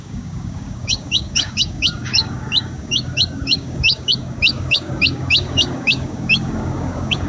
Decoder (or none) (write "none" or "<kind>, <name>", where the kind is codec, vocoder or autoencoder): codec, DAC